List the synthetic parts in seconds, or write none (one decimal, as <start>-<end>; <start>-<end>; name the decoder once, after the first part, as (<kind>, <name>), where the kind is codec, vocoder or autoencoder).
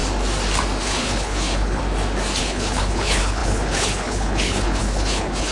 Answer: 0.8-1.8 (codec, HILCodec); 2.4-5.5